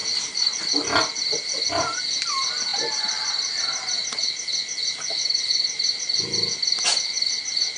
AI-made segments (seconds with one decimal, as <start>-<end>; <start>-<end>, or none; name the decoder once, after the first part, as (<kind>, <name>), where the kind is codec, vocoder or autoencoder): none